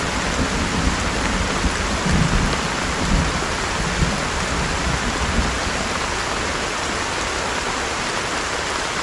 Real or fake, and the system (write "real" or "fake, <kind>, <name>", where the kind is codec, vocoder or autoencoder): real